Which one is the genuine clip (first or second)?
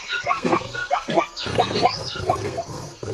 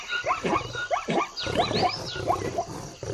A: second